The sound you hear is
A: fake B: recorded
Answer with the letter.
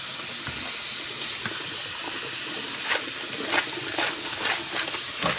B